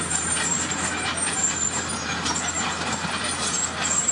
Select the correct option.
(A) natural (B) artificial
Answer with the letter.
A